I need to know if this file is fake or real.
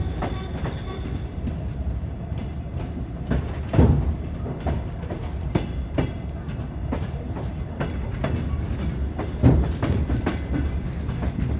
real